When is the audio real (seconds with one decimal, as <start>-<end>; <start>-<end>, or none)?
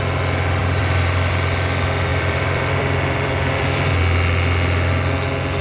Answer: 0.0-0.6; 1.3-2.1; 3.9-5.6